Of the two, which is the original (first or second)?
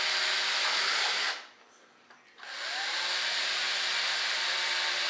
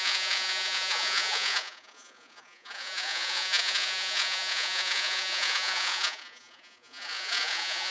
first